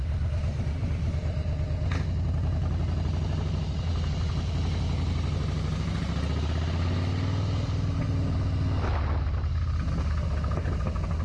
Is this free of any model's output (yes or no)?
yes